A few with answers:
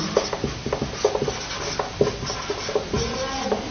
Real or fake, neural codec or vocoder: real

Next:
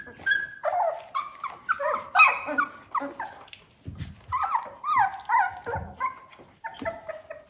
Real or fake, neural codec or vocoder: real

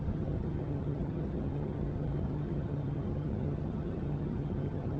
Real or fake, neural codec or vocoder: fake, vocoder, HiFi-GAN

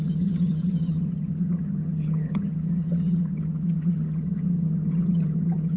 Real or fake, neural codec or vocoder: fake, vocoder, HiFi-GAN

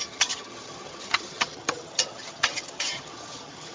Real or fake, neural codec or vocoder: fake, vocoder, HiFi-GAN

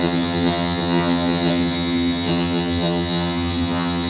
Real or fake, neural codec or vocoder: fake, vocoder, HiFi-GAN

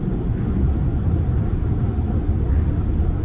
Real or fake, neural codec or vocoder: real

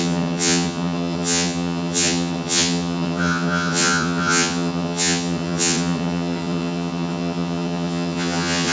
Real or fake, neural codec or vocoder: fake, vocoder, HiFi-GAN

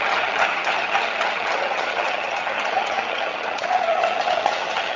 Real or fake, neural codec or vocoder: fake, vocoder, HiFi-GAN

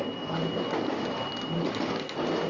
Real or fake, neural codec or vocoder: real